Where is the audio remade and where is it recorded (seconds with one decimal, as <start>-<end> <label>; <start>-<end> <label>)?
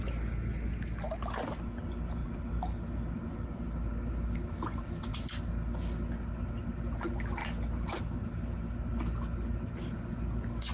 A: 0.0-10.7 recorded